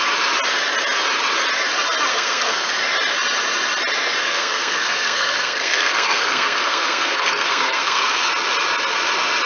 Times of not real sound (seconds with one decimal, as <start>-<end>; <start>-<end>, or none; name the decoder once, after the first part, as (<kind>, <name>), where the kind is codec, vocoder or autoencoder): 2.1-2.7 (codec, SNAC); 4.2-8.3